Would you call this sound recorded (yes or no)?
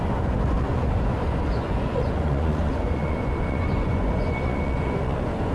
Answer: no